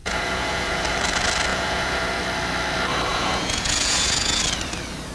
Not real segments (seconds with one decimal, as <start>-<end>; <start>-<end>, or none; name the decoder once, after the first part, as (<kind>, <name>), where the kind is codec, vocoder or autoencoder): 0.0-0.8 (vocoder, Vocos); 1.5-2.2; 3.1-4.4